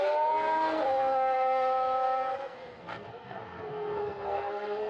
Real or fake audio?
fake